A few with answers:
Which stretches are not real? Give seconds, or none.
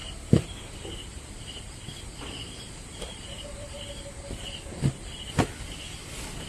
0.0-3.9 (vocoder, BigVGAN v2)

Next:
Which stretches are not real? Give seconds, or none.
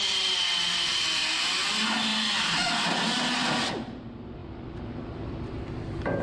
none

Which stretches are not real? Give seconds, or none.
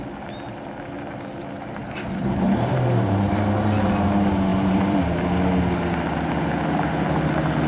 1.8-3.4 (vocoder, BigVGAN v2); 4.5-5.2